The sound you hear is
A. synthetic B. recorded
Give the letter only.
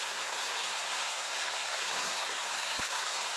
A